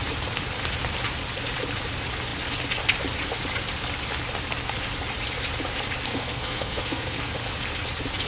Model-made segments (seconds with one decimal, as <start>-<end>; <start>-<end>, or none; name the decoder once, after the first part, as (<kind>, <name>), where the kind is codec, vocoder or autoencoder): 6.1-7.4 (codec, SNAC)